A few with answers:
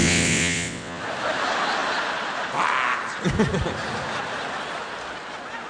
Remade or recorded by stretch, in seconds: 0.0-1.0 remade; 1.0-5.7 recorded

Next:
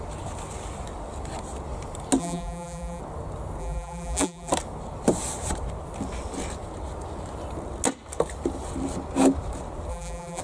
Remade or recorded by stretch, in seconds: 0.0-2.2 recorded; 2.2-3.0 remade; 3.0-3.6 recorded; 3.6-4.5 remade; 4.5-9.9 recorded; 9.9-10.4 remade

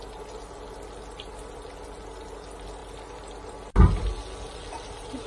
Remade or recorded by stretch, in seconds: 0.0-5.3 recorded

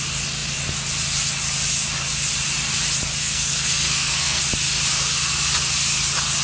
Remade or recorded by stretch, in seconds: 0.0-3.2 recorded; 3.2-4.4 remade; 4.4-6.4 recorded

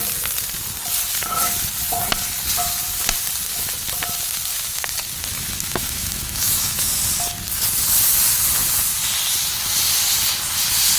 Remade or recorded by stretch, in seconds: 0.0-5.3 recorded; 5.3-6.9 remade; 6.9-11.0 recorded

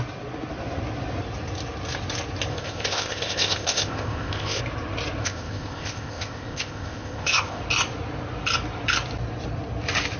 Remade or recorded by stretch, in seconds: 0.0-2.5 recorded; 2.5-4.6 remade; 4.6-5.2 recorded; 5.2-7.6 remade; 7.6-10.2 recorded